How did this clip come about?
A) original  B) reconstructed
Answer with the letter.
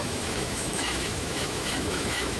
B